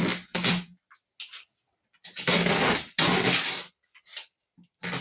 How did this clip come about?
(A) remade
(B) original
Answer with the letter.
B